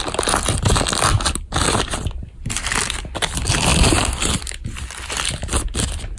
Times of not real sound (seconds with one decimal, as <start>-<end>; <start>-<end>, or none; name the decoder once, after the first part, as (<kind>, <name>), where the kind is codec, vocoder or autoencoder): none